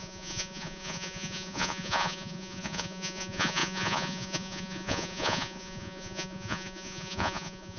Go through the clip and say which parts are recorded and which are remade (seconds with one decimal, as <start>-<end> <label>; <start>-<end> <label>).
0.0-7.8 remade

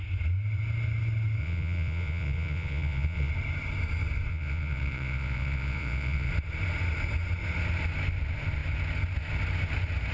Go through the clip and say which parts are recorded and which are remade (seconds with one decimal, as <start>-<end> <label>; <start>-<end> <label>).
0.0-1.4 recorded; 1.4-3.3 remade; 3.3-4.3 recorded; 4.3-6.3 remade; 6.3-10.1 recorded

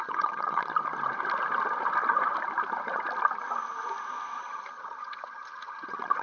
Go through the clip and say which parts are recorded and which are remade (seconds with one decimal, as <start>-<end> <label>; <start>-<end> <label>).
0.0-0.7 remade; 0.7-4.4 recorded; 4.4-6.2 remade